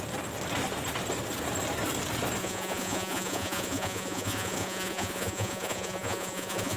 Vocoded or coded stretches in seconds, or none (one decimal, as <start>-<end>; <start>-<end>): 2.4-6.8